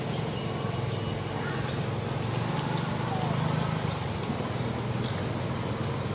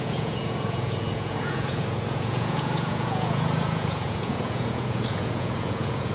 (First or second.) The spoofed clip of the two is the second